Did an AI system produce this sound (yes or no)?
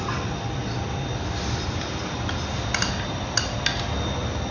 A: no